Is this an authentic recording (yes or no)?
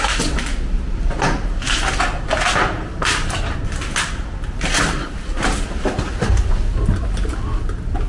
yes